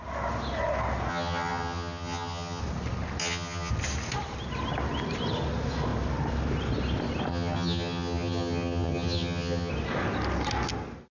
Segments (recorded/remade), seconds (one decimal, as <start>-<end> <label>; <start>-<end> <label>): 0.0-1.1 recorded; 1.1-2.6 remade; 2.6-3.2 recorded; 3.2-3.7 remade; 3.7-7.3 recorded; 7.3-9.7 remade; 9.7-11.2 recorded